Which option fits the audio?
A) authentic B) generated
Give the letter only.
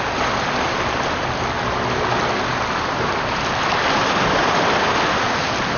A